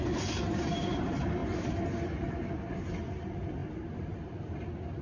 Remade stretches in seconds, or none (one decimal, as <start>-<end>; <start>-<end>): none